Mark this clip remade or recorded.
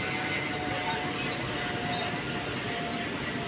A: recorded